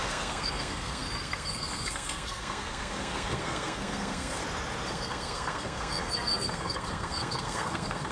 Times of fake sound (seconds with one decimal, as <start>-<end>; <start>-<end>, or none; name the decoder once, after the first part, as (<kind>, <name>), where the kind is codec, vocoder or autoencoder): 0.0-4.4 (codec, SNAC); 4.9-8.1